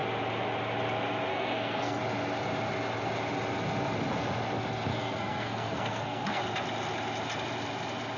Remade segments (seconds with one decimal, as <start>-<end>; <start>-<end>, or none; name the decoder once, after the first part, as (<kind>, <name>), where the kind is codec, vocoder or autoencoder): 1.3-2.0 (codec, SNAC); 4.9-6.4